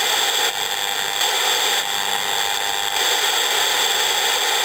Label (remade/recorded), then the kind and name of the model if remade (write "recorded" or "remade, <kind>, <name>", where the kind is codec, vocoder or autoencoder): recorded